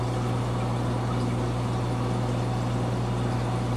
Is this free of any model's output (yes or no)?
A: yes